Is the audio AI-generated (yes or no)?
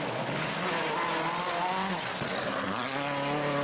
no